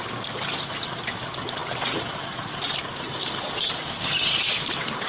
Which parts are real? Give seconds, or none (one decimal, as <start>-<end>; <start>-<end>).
0.0-5.1